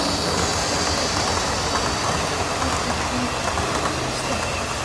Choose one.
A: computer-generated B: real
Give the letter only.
B